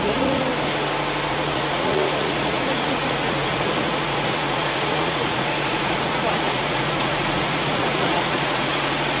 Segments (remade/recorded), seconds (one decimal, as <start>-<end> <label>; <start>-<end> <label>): 0.0-0.5 remade; 0.5-1.3 recorded; 1.3-9.2 remade